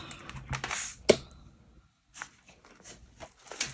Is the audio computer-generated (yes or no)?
no